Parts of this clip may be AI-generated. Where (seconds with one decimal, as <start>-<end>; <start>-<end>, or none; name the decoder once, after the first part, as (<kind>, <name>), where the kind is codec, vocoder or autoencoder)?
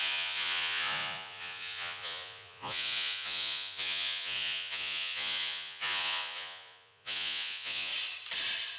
0.0-7.9 (vocoder, Vocos)